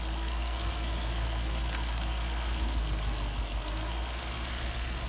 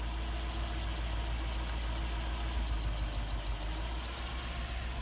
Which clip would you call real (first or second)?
second